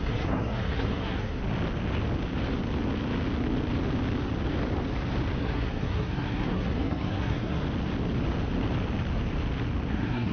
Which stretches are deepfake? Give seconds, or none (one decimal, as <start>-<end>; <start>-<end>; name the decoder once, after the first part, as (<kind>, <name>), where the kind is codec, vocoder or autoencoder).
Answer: 0.0-1.4 (codec, SNAC); 5.4-7.6; 9.9-10.3